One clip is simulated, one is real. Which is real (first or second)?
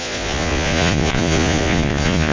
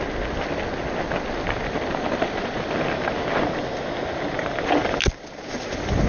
second